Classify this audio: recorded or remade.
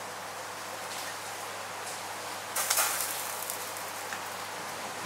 recorded